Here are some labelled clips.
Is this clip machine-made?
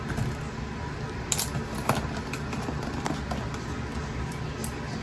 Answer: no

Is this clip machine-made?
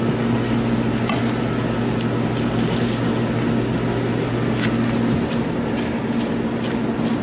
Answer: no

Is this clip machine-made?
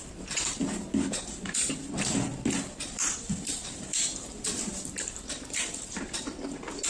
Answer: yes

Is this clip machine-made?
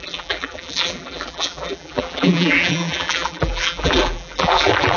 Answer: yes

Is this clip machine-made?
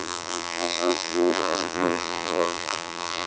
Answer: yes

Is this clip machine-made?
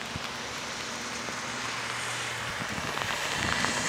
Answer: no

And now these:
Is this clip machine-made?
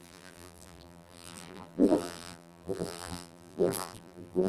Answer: yes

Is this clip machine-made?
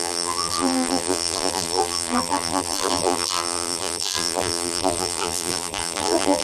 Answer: yes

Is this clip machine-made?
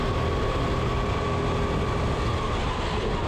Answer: no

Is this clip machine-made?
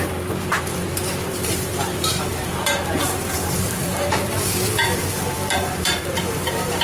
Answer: yes